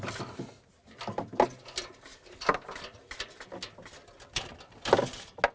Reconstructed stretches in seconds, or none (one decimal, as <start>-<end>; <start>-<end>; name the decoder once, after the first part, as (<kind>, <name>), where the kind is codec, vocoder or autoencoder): none